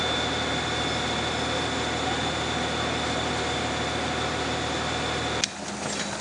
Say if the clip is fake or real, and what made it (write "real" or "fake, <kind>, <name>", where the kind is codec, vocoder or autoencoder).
real